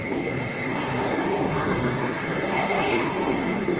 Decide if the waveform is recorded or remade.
remade